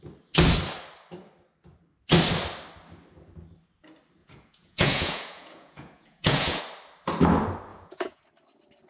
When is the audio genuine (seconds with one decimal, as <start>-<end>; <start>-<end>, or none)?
0.0-4.2; 6.6-7.7; 8.2-8.9